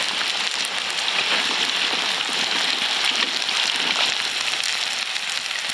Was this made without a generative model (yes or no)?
yes